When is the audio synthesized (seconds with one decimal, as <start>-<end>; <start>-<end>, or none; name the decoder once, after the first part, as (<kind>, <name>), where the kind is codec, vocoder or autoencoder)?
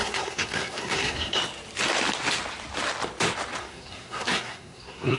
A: 0.0-1.4 (codec, SNAC); 3.6-5.2